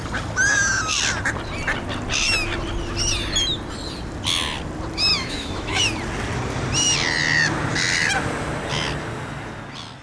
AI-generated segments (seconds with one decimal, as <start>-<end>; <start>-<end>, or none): 5.1-5.8